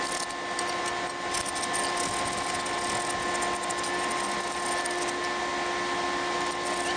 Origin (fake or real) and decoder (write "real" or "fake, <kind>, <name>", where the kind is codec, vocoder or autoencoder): real